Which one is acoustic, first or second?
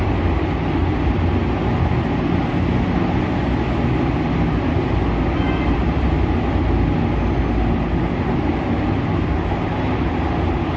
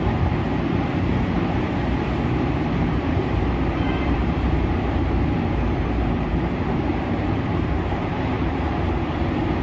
first